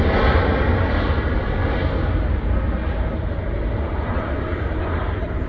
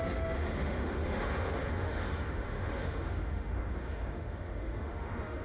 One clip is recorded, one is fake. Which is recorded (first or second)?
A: first